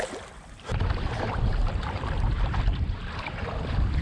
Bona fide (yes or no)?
no